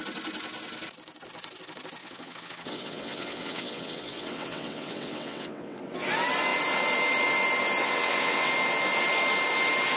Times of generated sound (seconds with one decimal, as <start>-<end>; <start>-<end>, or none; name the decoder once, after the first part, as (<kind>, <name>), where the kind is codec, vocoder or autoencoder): 2.0-5.8 (vocoder, WaveNeXt); 7.8-8.5